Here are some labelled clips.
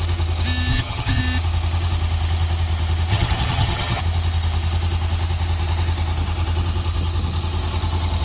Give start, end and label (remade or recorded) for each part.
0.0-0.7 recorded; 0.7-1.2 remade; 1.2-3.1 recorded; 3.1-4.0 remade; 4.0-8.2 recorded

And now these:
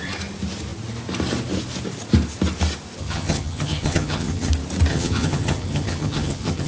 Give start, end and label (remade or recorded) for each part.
0.0-3.0 recorded; 3.0-4.5 remade; 4.5-4.9 recorded; 4.9-6.7 remade

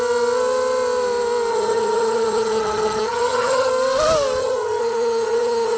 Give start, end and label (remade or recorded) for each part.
0.0-1.5 recorded; 1.5-3.7 remade; 3.7-4.4 recorded; 4.4-5.8 remade

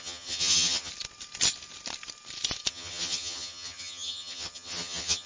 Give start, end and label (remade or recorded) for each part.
0.0-0.9 remade; 0.9-2.7 recorded; 2.7-5.3 remade

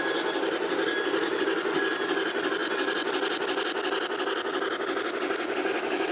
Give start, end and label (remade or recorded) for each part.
0.0-6.1 recorded

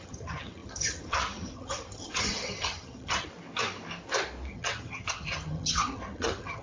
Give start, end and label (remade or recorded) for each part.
0.0-3.3 remade; 3.3-4.5 recorded; 4.5-6.6 remade

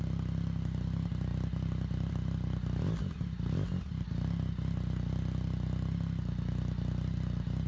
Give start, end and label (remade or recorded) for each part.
0.0-7.7 recorded

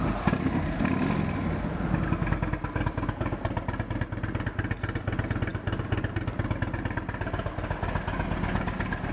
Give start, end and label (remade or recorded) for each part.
0.0-9.1 recorded